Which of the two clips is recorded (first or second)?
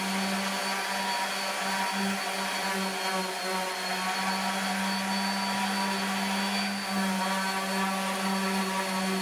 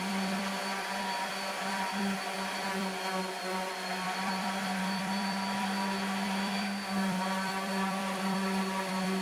first